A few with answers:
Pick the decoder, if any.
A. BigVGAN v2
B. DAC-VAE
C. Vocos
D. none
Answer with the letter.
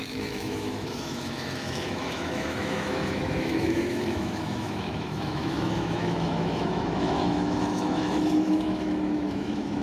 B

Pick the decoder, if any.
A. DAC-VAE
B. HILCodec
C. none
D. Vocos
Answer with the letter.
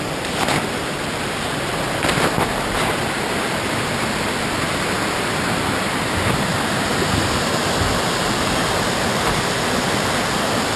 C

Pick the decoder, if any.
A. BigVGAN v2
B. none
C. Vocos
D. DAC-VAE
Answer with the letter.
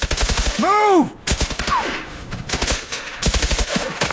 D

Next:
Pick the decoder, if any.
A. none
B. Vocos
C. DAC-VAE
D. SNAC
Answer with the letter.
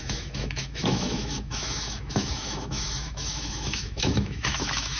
C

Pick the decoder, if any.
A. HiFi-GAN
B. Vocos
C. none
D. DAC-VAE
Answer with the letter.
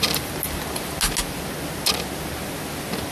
C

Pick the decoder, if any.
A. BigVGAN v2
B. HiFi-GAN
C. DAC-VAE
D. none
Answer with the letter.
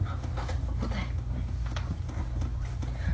D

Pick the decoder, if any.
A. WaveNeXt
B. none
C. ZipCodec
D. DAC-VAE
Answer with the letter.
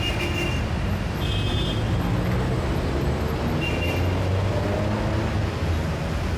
B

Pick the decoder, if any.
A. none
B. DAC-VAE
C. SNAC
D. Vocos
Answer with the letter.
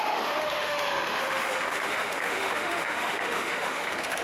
B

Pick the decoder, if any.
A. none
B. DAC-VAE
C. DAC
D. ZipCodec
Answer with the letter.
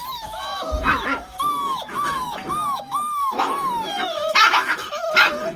B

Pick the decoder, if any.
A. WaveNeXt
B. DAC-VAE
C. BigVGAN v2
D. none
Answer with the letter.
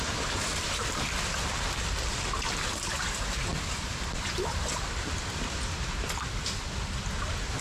D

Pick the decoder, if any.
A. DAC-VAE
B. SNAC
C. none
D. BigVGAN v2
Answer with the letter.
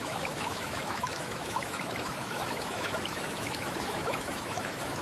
A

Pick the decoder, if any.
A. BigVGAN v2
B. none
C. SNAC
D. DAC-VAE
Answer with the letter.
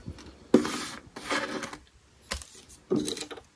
B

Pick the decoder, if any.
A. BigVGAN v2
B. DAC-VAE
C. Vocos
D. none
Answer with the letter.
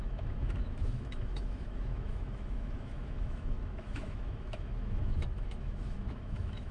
B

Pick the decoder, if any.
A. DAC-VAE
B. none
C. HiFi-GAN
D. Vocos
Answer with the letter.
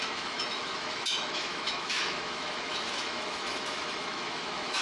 A